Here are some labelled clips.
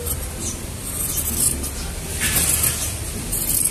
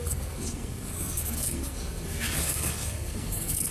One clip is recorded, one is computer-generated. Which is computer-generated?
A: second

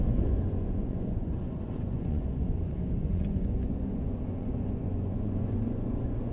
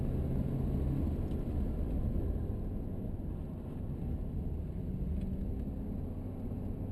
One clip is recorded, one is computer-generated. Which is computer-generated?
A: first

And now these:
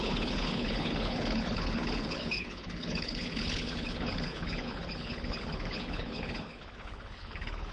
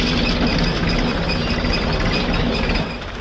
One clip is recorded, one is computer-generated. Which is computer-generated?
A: first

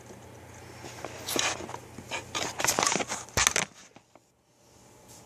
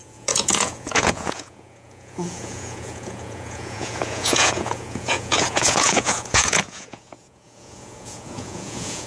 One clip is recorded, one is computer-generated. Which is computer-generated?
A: second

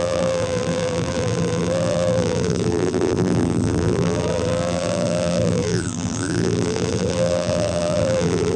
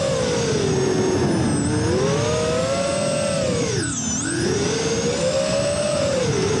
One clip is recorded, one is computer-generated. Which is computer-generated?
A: first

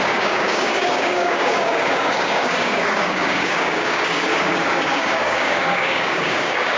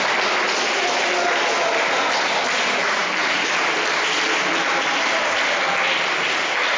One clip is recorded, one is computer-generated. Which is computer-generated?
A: first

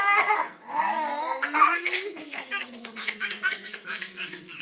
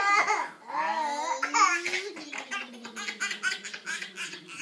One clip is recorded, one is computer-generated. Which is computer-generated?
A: first